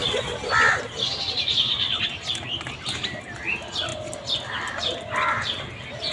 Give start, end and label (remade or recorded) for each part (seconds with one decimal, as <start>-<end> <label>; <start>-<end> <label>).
0.0-6.1 recorded